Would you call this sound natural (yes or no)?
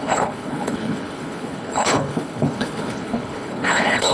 no